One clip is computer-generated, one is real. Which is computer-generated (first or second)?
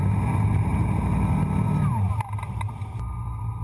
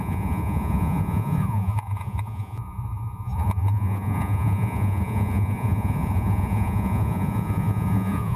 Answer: second